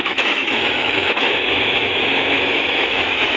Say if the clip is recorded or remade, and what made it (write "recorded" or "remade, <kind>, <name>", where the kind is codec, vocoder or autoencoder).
remade, autoencoder, DAC-VAE